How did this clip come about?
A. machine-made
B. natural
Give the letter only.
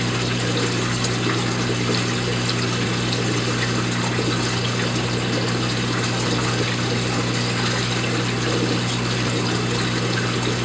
B